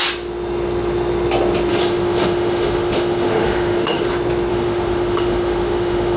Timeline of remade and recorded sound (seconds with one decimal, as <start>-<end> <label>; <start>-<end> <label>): 0.0-1.7 recorded; 1.7-4.1 remade; 4.1-4.5 recorded; 4.5-6.2 remade